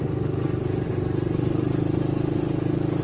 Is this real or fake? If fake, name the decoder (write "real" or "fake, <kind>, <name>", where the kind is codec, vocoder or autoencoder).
real